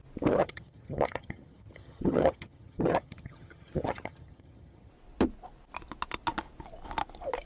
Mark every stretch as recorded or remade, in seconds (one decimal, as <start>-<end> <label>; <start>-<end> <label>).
0.0-0.4 recorded; 0.4-4.9 remade; 4.9-7.5 recorded